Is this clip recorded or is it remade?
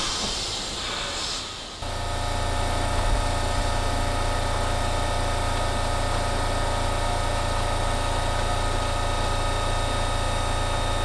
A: recorded